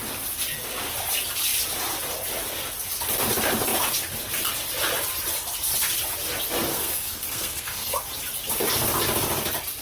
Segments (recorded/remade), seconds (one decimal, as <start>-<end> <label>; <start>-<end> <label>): 0.0-6.7 recorded; 6.7-8.0 remade; 8.0-9.8 recorded